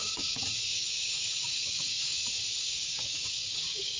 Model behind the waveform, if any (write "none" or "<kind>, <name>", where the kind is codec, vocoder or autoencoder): codec, DAC